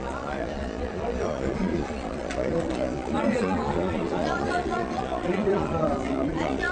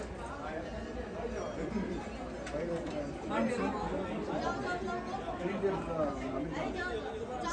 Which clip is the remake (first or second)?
first